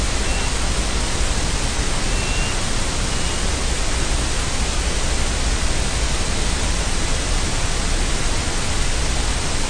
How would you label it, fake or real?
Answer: real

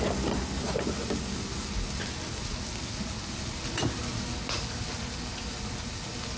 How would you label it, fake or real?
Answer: real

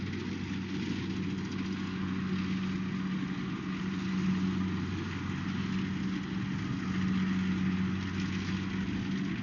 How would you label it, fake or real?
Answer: real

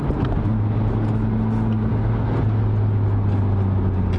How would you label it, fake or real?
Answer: real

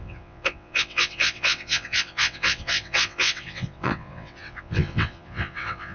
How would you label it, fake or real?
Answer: fake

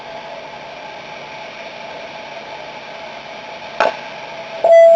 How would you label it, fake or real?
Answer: real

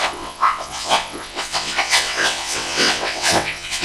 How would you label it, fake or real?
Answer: fake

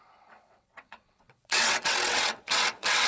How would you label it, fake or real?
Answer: fake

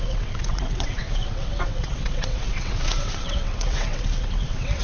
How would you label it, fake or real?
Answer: fake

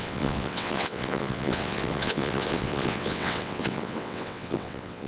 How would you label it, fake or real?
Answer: fake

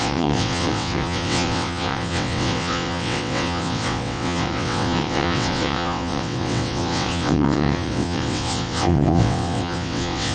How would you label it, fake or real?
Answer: fake